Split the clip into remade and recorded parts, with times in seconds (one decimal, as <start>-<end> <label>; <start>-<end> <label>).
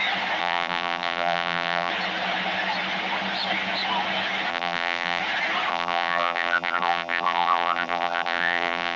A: 0.0-0.4 recorded; 0.4-1.9 remade; 1.9-4.5 recorded; 4.5-5.2 remade; 5.2-5.7 recorded; 5.7-9.0 remade